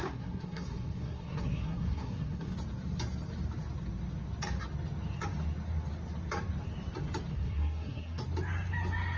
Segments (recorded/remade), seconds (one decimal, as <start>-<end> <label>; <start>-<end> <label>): 0.0-2.5 remade; 2.5-7.3 recorded; 7.3-8.2 remade; 8.2-9.2 recorded